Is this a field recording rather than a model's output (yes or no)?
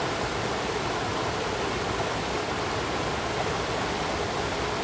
yes